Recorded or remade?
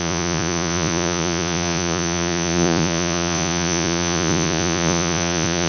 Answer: remade